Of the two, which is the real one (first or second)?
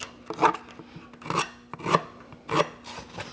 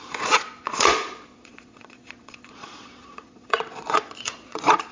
first